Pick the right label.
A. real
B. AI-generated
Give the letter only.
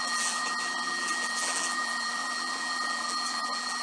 B